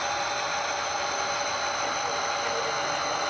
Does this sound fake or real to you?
real